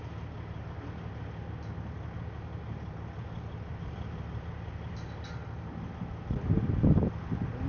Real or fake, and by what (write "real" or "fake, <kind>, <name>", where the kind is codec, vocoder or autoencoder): real